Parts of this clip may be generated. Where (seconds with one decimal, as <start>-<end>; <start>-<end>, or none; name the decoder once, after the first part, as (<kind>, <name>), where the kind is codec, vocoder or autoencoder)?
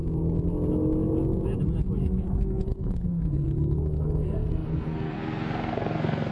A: 2.0-6.3 (codec, SNAC)